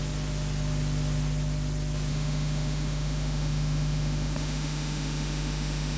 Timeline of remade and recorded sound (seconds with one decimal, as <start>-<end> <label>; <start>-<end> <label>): 0.0-2.1 recorded; 2.1-6.0 remade